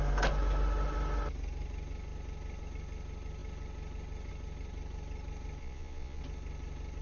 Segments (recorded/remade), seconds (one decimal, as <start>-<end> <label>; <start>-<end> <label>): 0.0-5.6 recorded; 5.6-6.2 remade; 6.2-7.0 recorded